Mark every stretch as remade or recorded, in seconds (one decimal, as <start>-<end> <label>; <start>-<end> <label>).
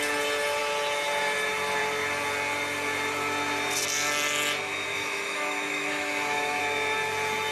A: 0.0-4.9 recorded; 4.9-6.6 remade; 6.6-7.5 recorded